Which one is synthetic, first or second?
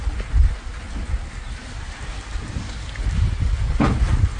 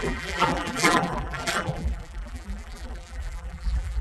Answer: second